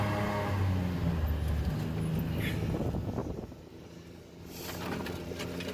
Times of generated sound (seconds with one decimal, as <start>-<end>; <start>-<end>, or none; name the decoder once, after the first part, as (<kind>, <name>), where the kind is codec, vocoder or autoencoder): 3.2-4.3 (vocoder, BigVGAN v2)